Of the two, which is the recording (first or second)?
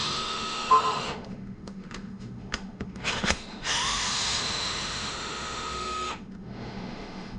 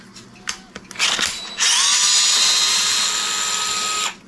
second